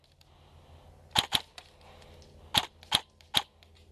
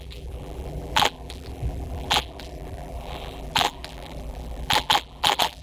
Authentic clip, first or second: first